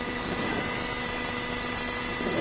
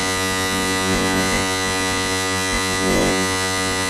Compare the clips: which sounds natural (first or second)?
first